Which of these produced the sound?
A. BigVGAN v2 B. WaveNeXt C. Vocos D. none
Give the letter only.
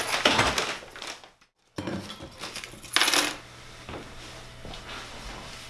D